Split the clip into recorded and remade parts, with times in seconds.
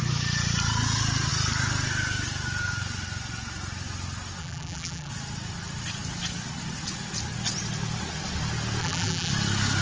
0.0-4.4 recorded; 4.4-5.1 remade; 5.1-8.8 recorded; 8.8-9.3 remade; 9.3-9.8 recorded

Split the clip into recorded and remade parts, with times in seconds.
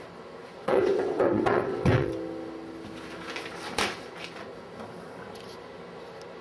0.0-0.6 recorded; 0.6-2.1 remade; 2.1-6.4 recorded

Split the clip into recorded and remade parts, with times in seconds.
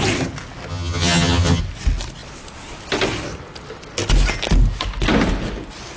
0.0-0.7 recorded; 0.7-1.6 remade; 1.6-6.0 recorded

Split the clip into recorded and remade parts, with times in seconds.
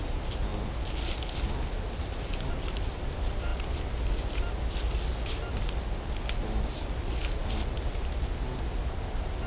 0.0-9.5 recorded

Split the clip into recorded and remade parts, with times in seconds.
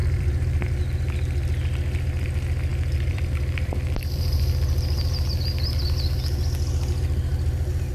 0.0-0.7 remade; 0.7-2.7 recorded; 2.7-6.2 remade; 6.2-7.9 recorded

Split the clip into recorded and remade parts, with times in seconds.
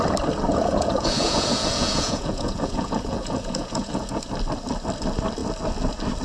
0.0-0.5 recorded; 0.5-4.2 remade; 4.2-6.2 recorded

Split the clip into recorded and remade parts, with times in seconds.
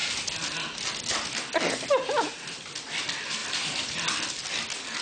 0.0-3.0 recorded; 3.0-5.0 remade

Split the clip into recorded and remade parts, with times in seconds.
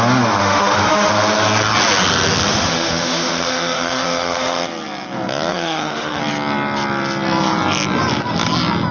0.0-0.4 recorded; 0.4-1.1 remade; 1.1-2.5 recorded; 2.5-4.6 remade; 4.6-5.5 recorded; 5.5-6.2 remade; 6.2-8.9 recorded